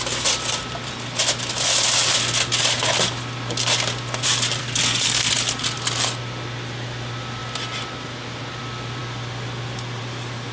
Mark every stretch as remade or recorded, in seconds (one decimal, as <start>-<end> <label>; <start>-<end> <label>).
0.0-4.6 recorded; 4.6-5.3 remade; 5.3-10.5 recorded